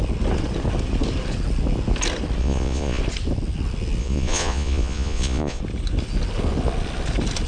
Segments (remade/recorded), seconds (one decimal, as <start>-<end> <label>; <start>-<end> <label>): 0.0-2.4 recorded; 2.4-3.0 remade; 3.0-4.0 recorded; 4.0-5.6 remade; 5.6-7.5 recorded